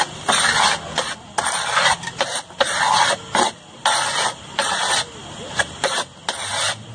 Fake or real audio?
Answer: real